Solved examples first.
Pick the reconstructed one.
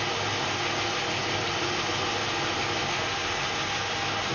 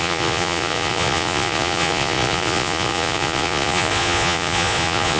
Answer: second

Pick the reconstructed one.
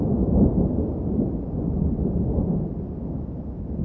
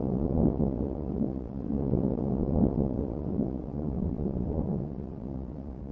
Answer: second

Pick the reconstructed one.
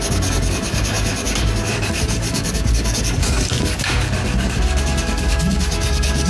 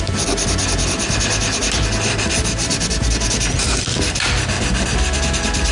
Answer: first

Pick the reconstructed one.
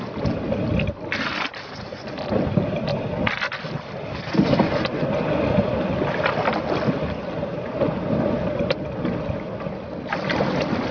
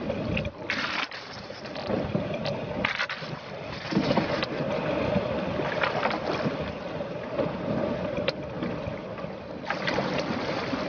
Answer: second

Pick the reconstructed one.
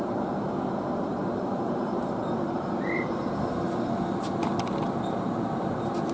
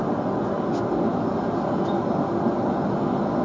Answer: first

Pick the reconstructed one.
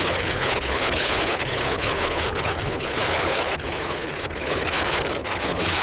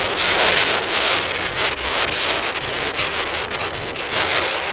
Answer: first